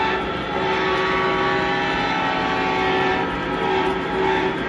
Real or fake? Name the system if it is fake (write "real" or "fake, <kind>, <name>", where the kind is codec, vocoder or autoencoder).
real